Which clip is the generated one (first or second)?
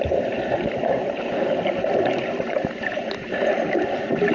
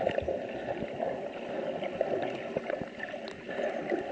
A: first